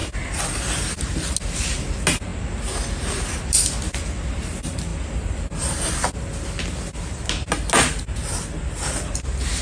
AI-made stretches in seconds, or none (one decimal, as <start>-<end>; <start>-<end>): none